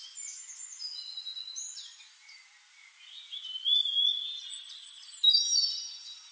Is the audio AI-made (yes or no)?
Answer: no